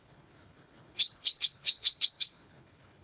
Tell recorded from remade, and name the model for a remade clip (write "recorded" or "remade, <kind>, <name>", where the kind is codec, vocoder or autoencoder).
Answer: remade, codec, HILCodec